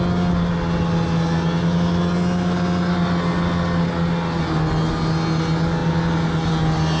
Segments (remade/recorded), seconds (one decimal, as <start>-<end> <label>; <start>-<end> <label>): 0.0-7.0 recorded